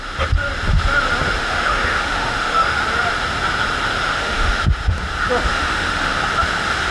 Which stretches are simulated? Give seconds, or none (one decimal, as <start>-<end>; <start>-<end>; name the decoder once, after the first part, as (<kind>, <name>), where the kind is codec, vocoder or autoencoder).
1.4-2.8 (autoencoder, DAC-VAE); 4.0-4.9; 5.5-6.1